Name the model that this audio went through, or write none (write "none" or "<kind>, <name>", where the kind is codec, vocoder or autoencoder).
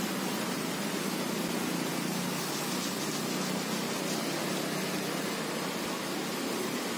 none